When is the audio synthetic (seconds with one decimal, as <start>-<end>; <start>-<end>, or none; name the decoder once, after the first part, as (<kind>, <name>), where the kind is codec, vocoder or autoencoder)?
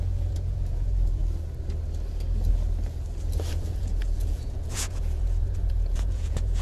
0.0-1.2 (vocoder, Vocos); 3.7-6.6